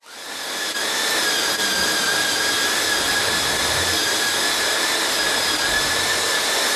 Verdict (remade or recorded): recorded